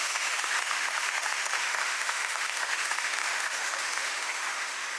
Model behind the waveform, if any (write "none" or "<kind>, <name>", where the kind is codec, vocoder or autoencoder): autoencoder, DAC-VAE